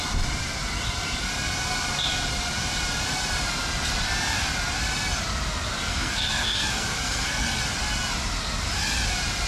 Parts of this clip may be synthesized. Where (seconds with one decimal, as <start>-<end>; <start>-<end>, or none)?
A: 5.9-7.6